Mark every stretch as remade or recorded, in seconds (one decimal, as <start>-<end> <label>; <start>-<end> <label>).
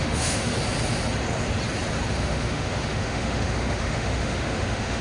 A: 0.0-0.5 remade; 0.5-2.1 recorded; 2.1-5.0 remade